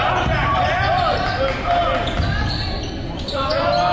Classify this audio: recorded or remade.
recorded